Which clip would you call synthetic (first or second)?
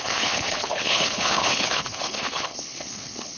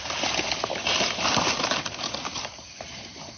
first